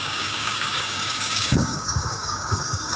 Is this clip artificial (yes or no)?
yes